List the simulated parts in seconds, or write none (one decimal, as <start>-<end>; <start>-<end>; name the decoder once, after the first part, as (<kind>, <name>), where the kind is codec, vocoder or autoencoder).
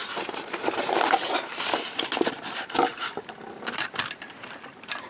0.8-2.9 (vocoder, BigVGAN v2); 4.6-5.1